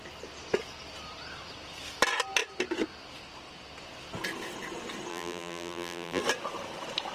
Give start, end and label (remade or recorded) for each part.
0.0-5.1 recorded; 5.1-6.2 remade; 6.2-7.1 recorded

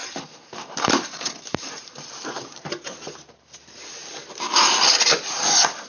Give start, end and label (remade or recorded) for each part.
0.0-2.7 remade; 2.7-5.9 recorded

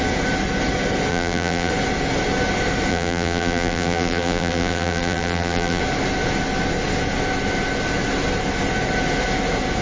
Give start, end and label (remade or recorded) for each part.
0.0-1.1 recorded; 1.1-1.7 remade; 1.7-2.9 recorded; 2.9-5.8 remade; 5.8-9.8 recorded

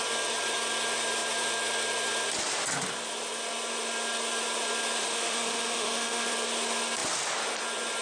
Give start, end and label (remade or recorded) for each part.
0.0-5.0 recorded; 5.0-6.3 remade; 6.3-8.0 recorded